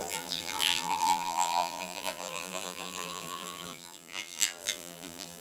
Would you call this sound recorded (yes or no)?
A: no